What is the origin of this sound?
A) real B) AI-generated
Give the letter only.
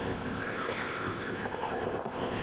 B